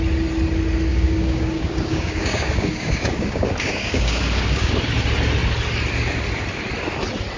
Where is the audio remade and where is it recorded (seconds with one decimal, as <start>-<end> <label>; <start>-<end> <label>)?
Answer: 0.0-0.9 recorded; 0.9-4.7 remade; 4.7-7.4 recorded